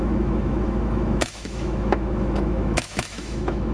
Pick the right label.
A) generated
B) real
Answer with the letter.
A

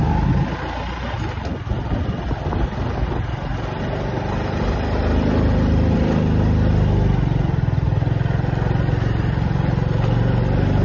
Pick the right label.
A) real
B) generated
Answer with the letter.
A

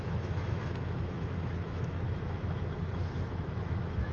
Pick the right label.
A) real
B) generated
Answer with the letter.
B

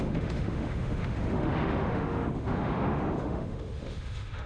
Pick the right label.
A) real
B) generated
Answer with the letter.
B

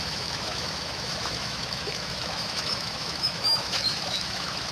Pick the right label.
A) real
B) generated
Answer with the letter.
B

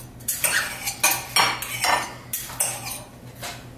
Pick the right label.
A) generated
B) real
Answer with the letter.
B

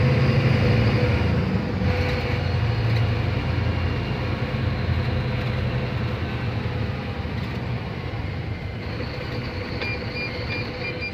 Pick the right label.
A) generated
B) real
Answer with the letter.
B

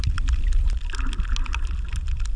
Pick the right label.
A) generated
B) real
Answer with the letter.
B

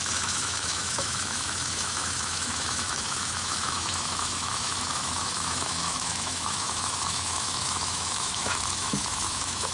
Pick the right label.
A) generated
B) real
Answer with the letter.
A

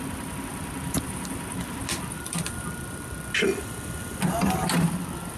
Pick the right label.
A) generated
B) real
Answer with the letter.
B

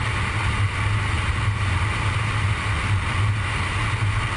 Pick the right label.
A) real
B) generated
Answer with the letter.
A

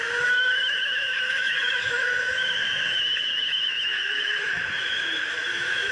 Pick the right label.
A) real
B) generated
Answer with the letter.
B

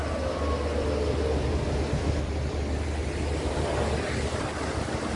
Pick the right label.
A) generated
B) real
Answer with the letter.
B